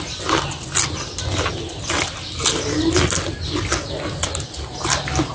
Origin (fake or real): real